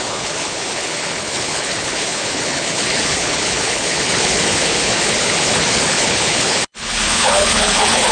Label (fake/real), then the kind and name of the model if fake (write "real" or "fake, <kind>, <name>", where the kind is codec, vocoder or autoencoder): fake, codec, HILCodec